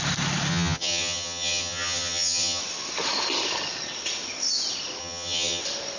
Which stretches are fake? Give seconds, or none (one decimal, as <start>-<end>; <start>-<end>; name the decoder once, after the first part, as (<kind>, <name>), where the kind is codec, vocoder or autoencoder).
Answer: 0.5-2.6 (vocoder, HiFi-GAN); 5.0-5.6